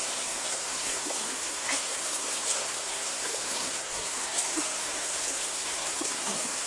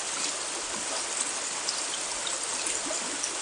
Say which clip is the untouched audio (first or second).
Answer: second